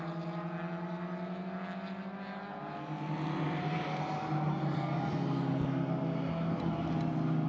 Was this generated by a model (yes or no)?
no